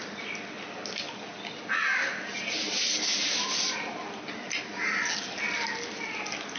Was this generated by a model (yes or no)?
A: no